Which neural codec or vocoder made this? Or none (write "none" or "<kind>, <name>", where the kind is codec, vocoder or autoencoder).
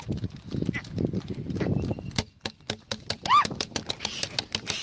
none